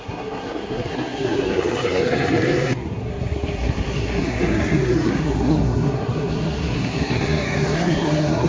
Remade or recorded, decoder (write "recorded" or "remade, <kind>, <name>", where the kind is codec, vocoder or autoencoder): remade, codec, SNAC